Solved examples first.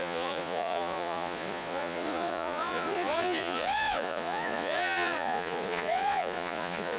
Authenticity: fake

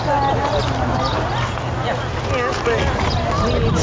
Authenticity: real